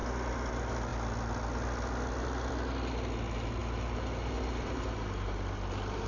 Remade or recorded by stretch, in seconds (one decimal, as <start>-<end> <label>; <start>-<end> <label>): 0.0-3.6 recorded; 3.6-6.1 remade